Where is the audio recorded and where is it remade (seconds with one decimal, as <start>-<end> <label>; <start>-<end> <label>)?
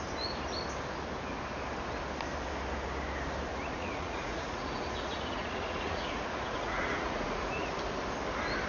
0.0-3.5 recorded; 3.5-7.7 remade; 7.7-8.7 recorded